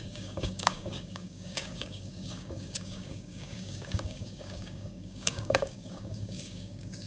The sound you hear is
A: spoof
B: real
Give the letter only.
A